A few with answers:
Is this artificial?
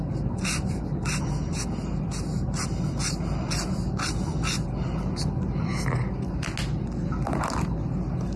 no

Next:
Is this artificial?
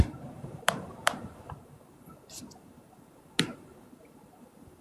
yes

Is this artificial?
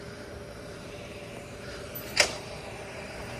yes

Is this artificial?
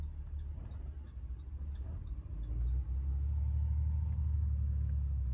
no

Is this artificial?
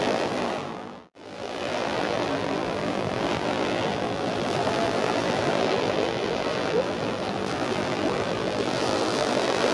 yes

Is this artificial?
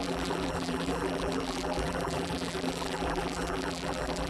yes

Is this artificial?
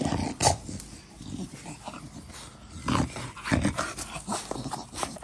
no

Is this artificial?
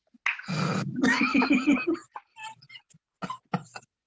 no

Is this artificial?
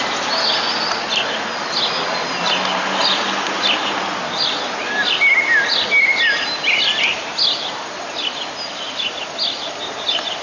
no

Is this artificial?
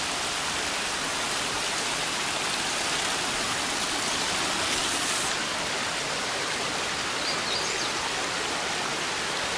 no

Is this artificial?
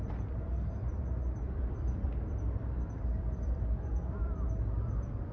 yes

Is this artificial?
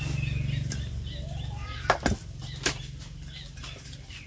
no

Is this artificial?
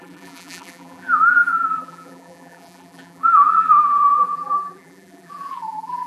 yes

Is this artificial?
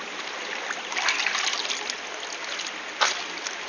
no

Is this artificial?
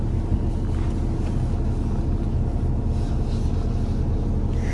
no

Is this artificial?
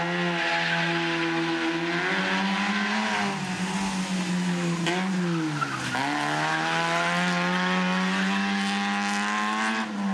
no